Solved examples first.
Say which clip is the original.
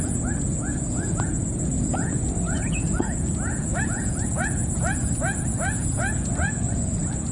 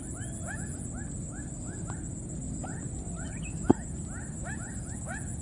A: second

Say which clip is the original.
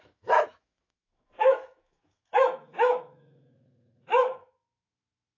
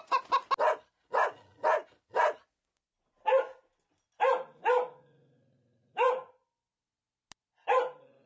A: second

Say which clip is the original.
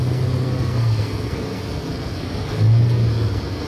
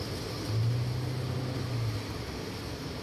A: second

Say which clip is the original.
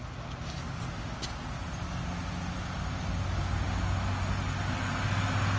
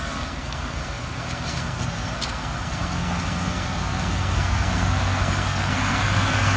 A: first